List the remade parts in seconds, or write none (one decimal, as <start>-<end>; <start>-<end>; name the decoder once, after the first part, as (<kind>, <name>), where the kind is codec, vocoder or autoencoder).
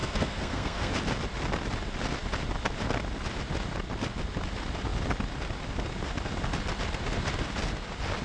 0.0-0.9 (codec, SNAC)